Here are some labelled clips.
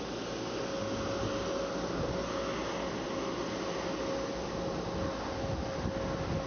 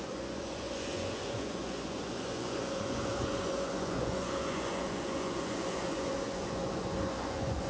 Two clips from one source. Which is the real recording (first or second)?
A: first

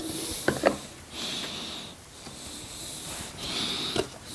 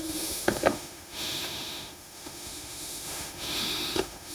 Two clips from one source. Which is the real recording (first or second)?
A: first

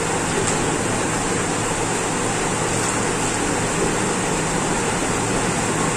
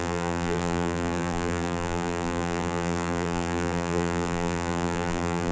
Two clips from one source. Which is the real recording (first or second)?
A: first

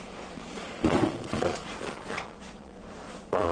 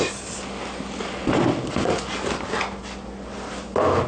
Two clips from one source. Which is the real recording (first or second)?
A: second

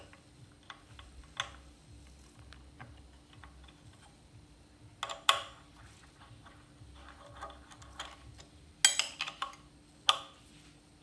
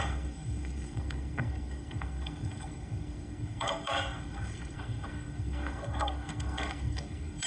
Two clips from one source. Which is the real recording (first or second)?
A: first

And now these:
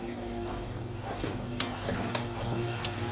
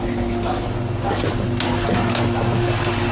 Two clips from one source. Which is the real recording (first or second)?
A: second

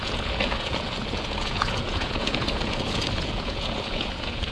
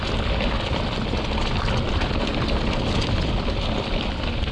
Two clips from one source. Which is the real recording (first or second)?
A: second